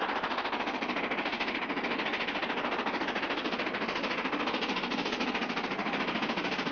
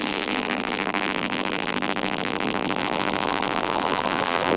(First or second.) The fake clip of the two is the second